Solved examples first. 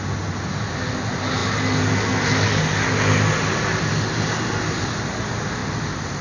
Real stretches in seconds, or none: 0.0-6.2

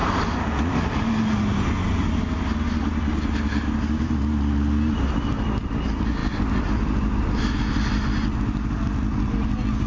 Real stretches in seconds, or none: 0.0-9.9